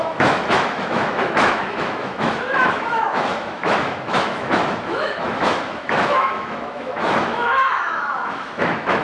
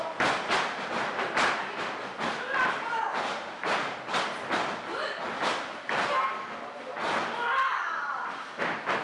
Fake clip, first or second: first